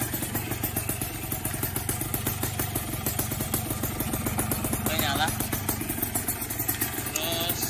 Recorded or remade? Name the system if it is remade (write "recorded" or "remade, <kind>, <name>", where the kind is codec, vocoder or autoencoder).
recorded